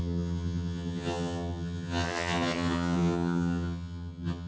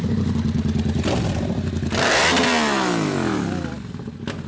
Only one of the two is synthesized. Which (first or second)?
first